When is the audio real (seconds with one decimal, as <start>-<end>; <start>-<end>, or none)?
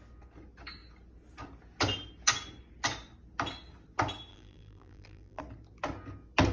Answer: 0.0-4.3; 5.4-6.5